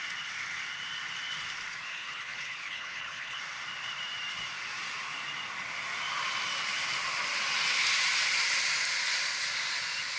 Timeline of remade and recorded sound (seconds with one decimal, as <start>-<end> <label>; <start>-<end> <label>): 0.0-1.9 recorded; 1.9-3.4 remade; 3.4-10.2 recorded